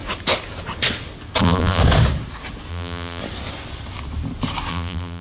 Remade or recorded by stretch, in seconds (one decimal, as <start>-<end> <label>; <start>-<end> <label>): 0.0-1.4 recorded; 1.4-1.8 remade; 1.8-2.7 recorded; 2.7-3.2 remade; 3.2-4.7 recorded; 4.7-5.2 remade